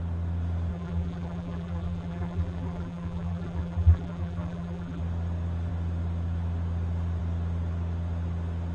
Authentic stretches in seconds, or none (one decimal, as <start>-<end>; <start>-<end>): 0.0-0.7; 5.0-8.7